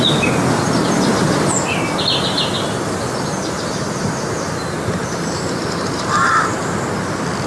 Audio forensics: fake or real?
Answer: real